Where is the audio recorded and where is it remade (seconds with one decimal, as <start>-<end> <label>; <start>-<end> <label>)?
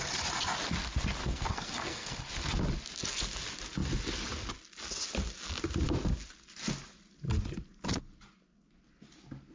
0.0-1.2 recorded; 1.2-2.2 remade; 2.2-9.5 recorded